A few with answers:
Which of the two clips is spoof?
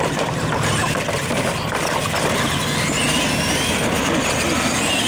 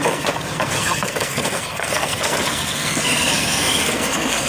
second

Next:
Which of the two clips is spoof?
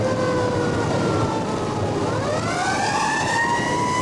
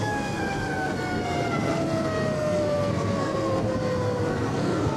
second